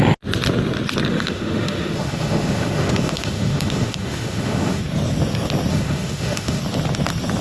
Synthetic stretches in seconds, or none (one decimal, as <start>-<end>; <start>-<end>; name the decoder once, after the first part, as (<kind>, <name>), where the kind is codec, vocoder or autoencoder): 1.1-4.8 (autoencoder, DAC-VAE); 5.7-6.6